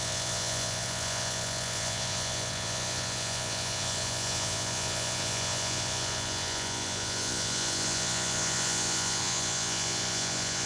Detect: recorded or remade remade